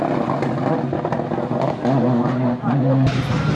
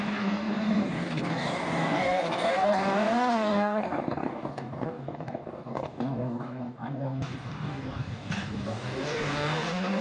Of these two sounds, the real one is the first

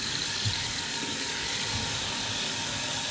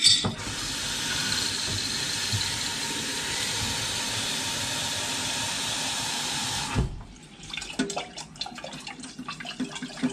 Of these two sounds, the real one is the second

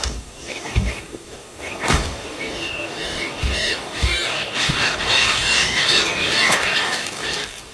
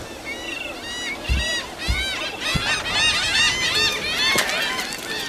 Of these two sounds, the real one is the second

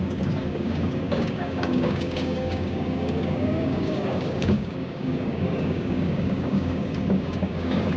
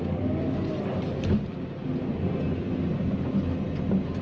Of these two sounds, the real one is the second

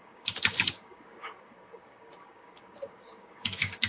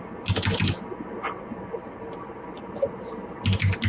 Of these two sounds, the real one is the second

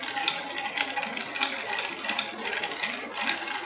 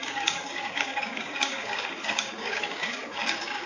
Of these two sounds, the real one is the first